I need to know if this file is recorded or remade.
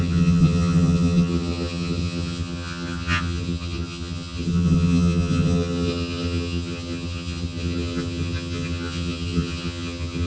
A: remade